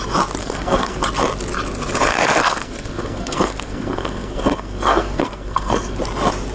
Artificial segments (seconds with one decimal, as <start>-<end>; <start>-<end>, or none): 0.4-1.0; 2.1-6.0